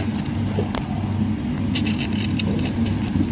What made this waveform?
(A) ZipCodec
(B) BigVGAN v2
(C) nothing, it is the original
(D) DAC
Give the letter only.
C